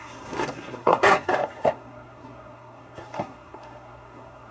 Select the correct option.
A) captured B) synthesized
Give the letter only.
B